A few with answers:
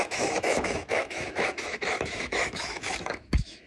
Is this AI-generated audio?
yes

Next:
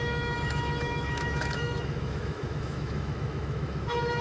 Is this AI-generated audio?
yes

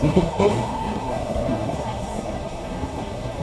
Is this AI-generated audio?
yes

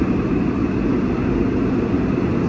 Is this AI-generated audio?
no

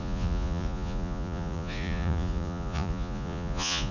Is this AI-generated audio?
yes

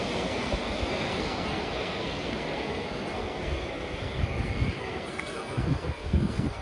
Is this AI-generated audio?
yes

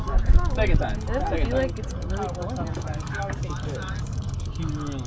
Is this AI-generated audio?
no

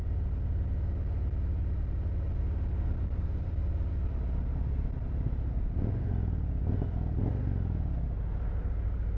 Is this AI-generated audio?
no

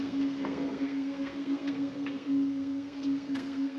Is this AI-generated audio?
yes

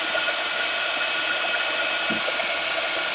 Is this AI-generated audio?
no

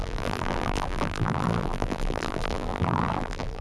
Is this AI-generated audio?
yes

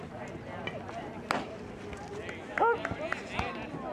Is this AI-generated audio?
no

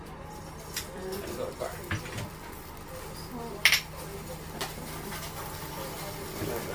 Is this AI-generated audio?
no